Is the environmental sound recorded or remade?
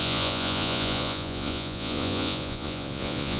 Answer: remade